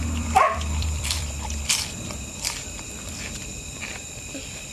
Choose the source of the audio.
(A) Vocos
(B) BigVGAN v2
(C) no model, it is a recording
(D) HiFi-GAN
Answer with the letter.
B